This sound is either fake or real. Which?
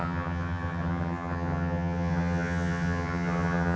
fake